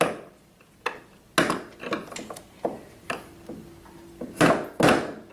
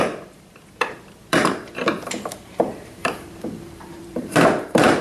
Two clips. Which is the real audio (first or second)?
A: first